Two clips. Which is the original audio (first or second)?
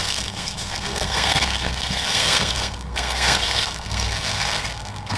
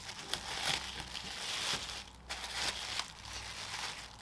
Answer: second